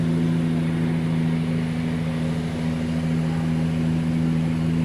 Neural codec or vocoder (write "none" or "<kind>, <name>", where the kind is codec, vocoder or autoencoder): none